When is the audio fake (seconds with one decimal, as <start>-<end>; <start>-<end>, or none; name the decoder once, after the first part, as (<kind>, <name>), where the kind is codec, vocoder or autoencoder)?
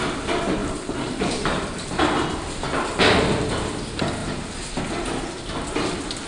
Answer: 0.6-1.9 (vocoder, BigVGAN v2)